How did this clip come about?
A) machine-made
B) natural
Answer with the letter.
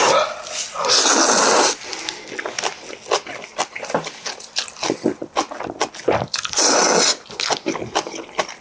B